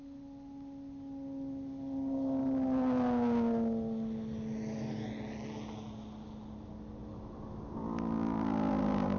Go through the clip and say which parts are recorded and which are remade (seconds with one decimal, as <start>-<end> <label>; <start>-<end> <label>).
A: 0.0-9.2 recorded